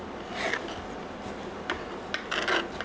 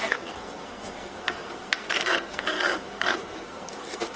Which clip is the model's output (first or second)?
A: second